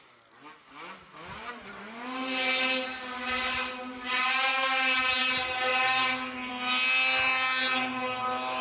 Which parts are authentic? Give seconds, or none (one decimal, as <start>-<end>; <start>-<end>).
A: 0.0-8.6